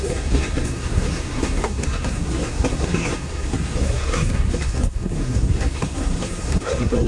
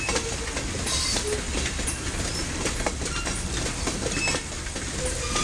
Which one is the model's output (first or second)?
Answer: first